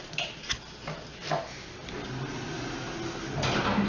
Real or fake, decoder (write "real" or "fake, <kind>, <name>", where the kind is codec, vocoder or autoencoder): real